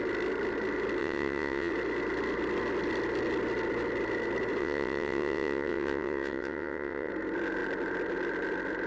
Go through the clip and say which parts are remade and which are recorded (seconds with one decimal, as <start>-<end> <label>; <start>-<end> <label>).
0.0-1.0 recorded; 1.0-1.7 remade; 1.7-4.6 recorded; 4.6-7.1 remade; 7.1-8.9 recorded